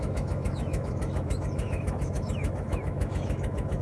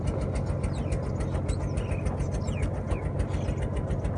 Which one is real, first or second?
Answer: second